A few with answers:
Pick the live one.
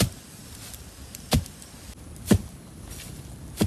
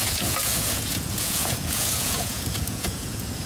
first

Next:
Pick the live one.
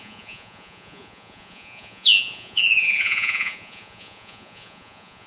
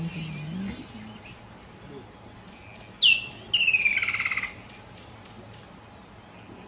second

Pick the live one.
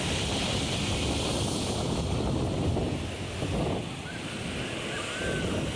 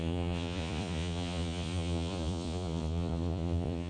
first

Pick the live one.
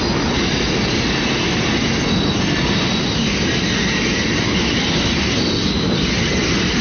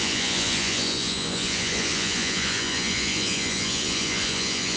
first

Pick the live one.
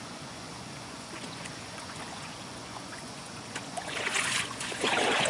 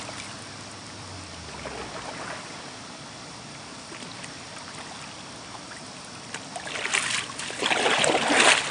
second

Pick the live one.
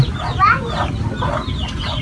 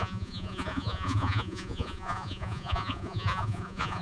first